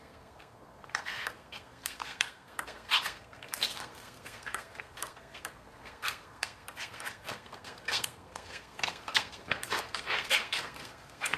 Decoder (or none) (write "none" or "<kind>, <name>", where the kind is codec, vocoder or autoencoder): codec, SNAC